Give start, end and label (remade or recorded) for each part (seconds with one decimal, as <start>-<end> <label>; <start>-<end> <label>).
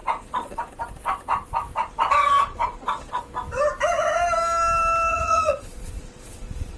0.0-0.7 remade; 0.7-1.8 recorded; 1.8-3.2 remade; 3.2-5.1 recorded; 5.1-6.8 remade